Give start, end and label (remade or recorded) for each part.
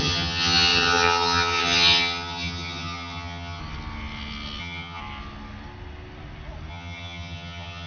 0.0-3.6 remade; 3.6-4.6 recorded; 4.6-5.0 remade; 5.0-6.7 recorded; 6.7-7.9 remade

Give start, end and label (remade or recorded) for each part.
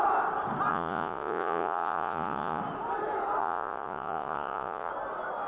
0.0-0.7 recorded; 0.7-2.6 remade; 2.6-3.4 recorded; 3.4-4.9 remade; 4.9-5.5 recorded